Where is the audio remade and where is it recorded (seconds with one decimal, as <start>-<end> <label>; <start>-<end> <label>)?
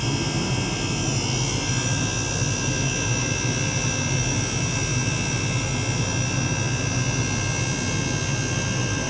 0.0-9.1 recorded